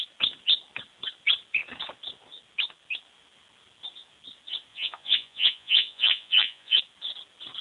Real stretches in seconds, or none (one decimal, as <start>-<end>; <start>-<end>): 0.0-4.7; 6.8-7.6